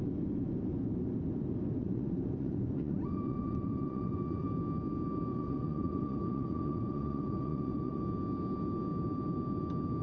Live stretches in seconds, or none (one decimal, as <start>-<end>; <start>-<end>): 0.0-1.8; 4.5-5.3; 8.0-10.0